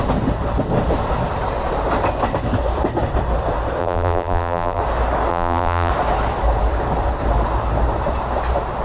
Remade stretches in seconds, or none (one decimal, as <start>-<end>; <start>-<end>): 3.8-4.8; 5.3-5.9